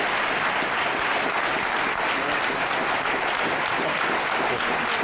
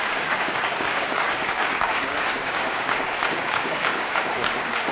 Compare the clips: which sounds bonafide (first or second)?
first